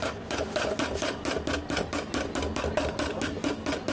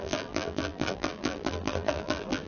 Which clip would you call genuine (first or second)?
first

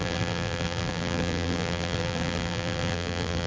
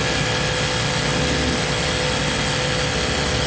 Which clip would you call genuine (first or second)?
second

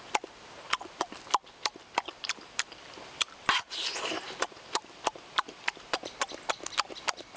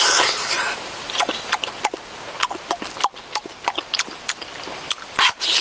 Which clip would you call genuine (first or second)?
second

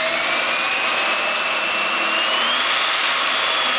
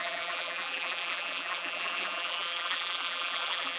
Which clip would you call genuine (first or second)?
first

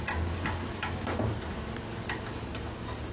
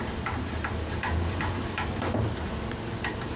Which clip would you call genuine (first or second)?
first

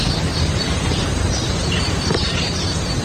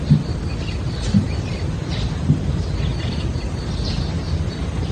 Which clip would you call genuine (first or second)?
second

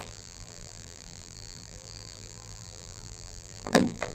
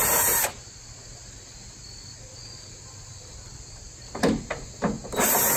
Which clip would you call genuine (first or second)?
second